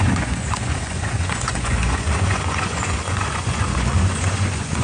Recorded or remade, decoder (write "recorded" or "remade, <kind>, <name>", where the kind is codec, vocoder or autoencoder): remade, vocoder, Vocos